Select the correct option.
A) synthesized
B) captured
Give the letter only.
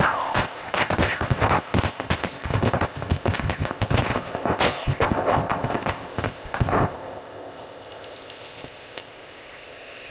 A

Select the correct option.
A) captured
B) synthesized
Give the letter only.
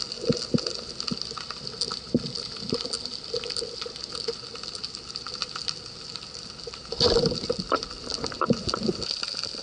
A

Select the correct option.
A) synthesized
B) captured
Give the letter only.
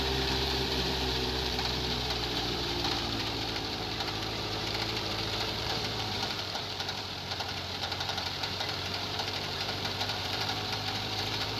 A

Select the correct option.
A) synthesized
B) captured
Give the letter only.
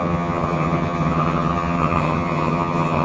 A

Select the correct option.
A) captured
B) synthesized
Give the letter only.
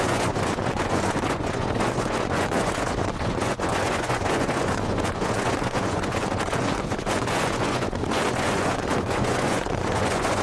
B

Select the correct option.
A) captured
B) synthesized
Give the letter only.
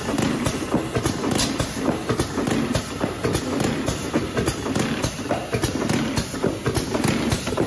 A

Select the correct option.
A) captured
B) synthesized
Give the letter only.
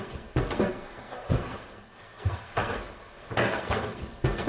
B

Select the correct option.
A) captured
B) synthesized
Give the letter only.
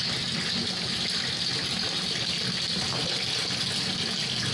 A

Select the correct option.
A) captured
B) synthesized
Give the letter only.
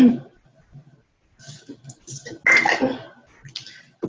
A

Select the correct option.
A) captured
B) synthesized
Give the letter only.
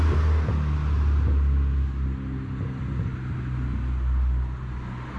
A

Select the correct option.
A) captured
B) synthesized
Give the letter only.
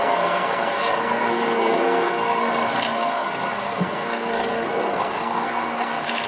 B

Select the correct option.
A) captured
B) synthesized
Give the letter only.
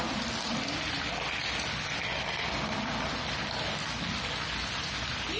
A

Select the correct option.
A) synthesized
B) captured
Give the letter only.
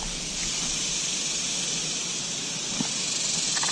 B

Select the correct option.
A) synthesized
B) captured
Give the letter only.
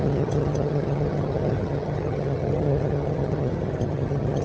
A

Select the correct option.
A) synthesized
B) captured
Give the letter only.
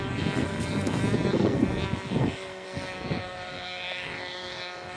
A